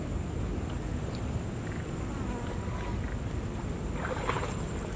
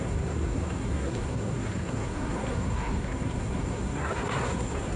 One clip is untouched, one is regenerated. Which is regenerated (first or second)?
second